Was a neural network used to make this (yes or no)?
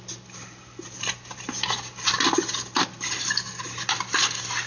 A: no